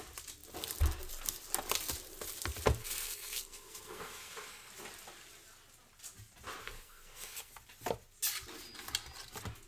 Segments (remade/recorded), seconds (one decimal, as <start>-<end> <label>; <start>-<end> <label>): 0.0-2.8 recorded; 2.8-4.7 remade; 4.7-6.6 recorded; 6.6-7.5 remade; 7.5-9.7 recorded